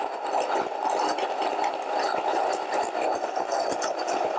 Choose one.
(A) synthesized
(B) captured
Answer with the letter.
B